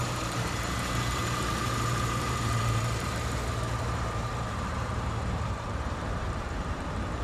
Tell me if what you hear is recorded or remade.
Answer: remade